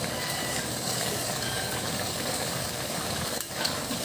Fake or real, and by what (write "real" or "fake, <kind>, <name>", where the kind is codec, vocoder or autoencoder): fake, codec, DAC